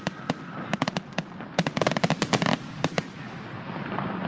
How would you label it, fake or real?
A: real